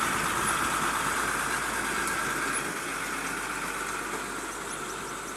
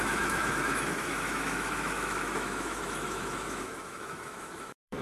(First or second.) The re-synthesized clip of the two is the second